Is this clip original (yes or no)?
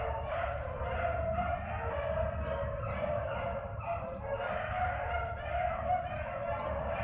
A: yes